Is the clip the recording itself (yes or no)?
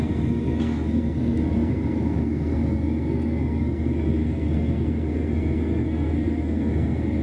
no